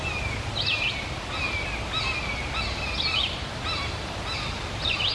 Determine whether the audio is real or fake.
real